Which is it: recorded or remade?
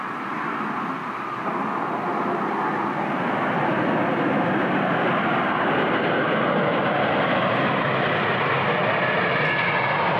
recorded